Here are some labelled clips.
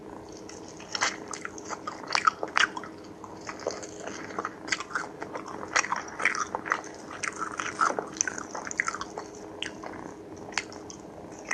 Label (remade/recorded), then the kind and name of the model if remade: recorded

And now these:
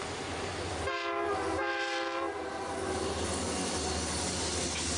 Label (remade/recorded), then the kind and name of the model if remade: recorded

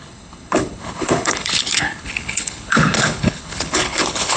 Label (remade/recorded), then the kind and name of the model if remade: remade, codec, HILCodec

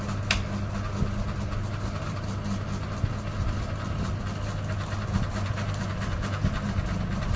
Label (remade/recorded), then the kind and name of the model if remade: recorded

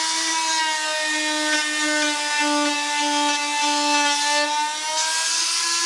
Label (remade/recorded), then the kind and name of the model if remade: recorded